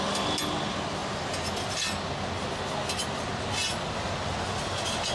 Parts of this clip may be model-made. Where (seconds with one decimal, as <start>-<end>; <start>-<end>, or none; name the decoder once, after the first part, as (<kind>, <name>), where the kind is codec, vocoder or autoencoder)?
none